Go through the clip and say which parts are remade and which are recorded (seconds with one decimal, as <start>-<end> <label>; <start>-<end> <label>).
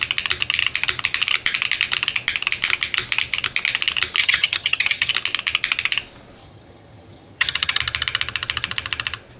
0.0-4.2 recorded; 4.2-5.1 remade; 5.1-6.4 recorded; 6.4-7.8 remade; 7.8-9.4 recorded